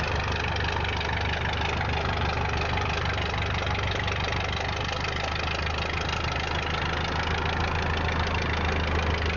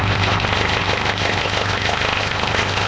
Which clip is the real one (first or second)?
first